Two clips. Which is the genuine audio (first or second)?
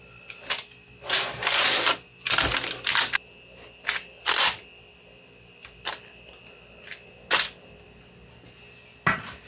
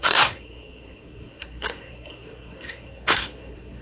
first